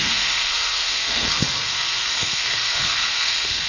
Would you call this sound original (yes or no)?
no